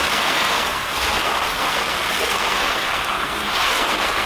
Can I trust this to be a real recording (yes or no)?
no